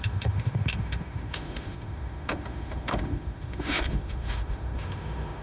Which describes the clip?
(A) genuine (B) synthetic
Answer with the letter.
B